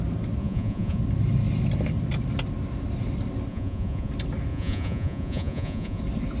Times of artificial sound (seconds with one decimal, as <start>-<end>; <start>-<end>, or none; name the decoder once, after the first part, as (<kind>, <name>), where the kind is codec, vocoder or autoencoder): 0.4-1.0 (vocoder, Vocos); 3.5-4.1; 4.5-6.0

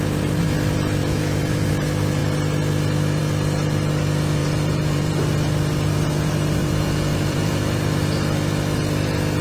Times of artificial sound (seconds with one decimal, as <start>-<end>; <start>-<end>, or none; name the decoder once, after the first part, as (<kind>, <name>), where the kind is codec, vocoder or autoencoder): 1.0-1.7 (vocoder, Vocos); 4.4-5.2; 6.6-7.6

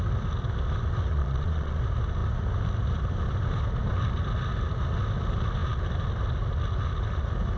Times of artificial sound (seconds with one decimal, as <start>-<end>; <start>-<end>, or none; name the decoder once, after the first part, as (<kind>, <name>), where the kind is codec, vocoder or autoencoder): 1.1-1.8 (vocoder, Vocos)

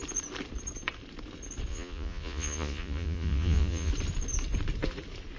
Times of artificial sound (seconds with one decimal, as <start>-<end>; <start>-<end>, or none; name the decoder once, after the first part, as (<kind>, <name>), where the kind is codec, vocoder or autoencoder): 1.7-3.9 (vocoder, Vocos)

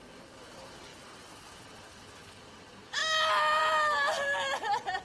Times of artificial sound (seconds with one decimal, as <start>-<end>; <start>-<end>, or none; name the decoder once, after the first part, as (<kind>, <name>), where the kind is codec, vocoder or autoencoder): none

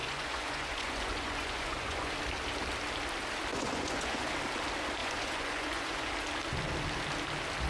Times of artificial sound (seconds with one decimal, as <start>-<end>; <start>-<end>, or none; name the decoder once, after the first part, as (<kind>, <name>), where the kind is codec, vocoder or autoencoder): 0.0-2.1 (vocoder, Vocos); 3.5-4.3; 5.0-6.1